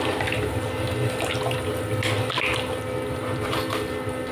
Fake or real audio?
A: real